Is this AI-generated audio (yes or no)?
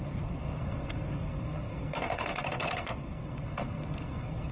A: yes